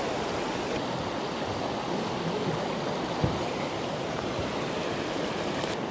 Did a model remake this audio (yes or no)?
no